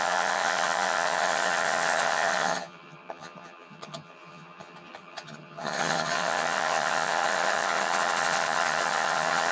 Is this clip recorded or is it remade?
remade